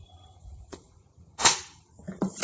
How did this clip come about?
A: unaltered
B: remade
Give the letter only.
B